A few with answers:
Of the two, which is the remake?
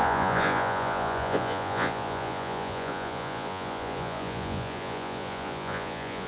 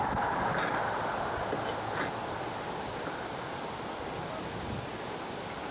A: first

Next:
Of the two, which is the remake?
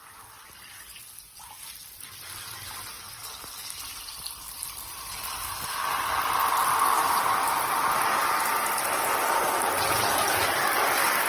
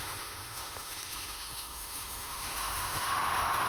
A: second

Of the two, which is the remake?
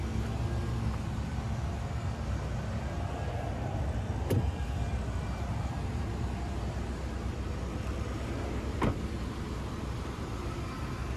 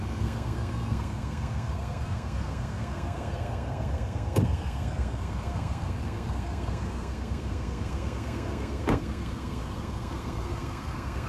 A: second